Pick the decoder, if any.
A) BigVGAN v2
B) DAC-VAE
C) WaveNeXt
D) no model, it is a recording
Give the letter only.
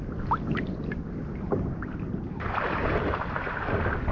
D